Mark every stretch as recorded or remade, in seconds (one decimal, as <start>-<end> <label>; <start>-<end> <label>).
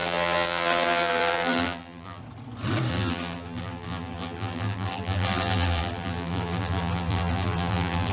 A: 0.0-2.2 remade; 2.2-2.9 recorded; 2.9-8.1 remade